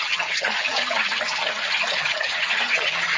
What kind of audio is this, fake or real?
fake